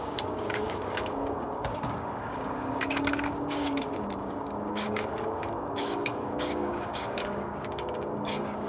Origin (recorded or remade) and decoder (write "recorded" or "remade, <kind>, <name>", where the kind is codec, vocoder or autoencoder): remade, codec, DAC